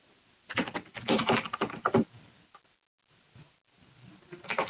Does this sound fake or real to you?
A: real